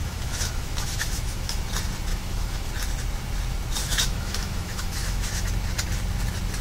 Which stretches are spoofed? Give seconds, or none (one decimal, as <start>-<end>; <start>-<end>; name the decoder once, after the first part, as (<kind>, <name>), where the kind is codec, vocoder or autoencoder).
0.0-1.7 (autoencoder, DAC-VAE); 2.1-2.7; 3.8-5.5